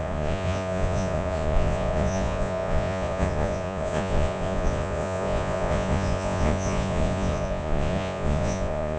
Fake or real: fake